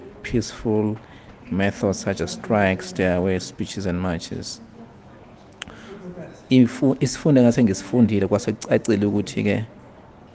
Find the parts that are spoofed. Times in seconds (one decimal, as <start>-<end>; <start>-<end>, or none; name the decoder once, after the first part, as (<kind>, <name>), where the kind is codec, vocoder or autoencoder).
4.7-8.2 (autoencoder, DAC-VAE)